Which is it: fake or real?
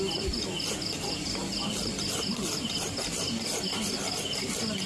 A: real